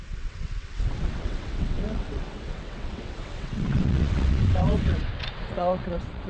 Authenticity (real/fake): fake